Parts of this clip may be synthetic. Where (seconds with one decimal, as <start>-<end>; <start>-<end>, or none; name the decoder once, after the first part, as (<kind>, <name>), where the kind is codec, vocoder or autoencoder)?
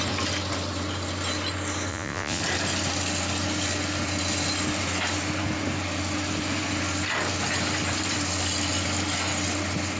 1.9-2.4 (vocoder, Vocos)